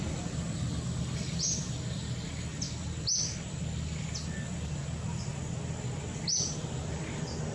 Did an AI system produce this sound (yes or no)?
no